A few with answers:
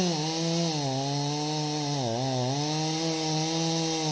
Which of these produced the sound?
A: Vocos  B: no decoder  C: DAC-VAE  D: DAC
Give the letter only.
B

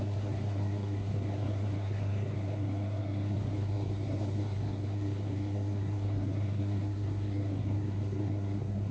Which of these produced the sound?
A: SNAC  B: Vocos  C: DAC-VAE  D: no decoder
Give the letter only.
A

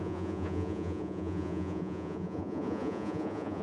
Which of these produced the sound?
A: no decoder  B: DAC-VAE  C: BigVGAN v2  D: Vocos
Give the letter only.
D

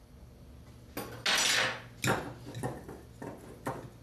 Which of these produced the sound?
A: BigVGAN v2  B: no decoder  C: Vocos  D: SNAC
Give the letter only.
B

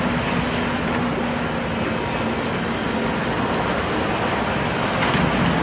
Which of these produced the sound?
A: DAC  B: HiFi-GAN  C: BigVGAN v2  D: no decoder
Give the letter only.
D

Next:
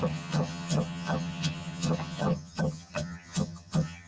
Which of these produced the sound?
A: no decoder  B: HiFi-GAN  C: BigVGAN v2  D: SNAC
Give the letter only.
B